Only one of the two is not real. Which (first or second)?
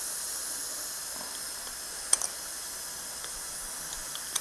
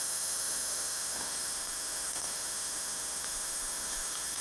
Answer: second